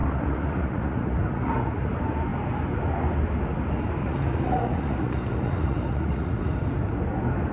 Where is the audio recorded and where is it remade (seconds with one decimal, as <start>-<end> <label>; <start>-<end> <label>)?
0.0-1.9 remade; 1.9-4.0 recorded; 4.0-6.5 remade; 6.5-7.5 recorded